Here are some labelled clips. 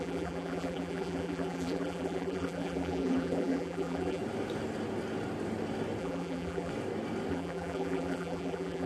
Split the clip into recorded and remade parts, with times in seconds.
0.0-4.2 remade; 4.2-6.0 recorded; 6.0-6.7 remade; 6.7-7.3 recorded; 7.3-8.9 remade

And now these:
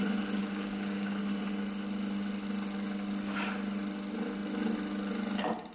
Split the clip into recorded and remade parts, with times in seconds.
0.0-0.4 recorded; 0.4-1.2 remade; 1.2-5.7 recorded